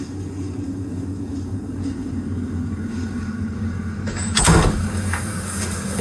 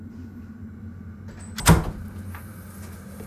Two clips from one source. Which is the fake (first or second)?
first